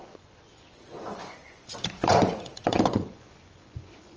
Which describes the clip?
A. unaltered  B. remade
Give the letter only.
B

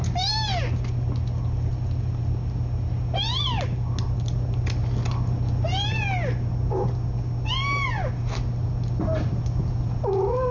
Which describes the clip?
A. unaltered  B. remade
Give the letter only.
A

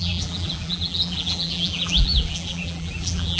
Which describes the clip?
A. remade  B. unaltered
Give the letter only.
A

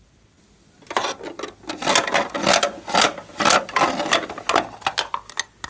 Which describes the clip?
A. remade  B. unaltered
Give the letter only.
B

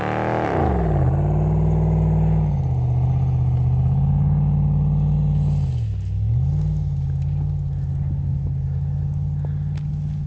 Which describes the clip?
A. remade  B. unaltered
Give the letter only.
B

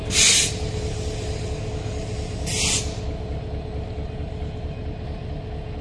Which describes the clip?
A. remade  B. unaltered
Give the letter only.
B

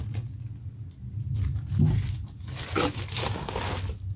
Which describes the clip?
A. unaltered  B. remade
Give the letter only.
A